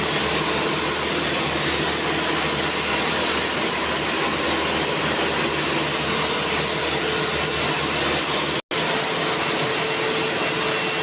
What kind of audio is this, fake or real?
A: real